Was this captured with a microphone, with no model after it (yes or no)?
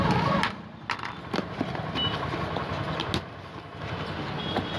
yes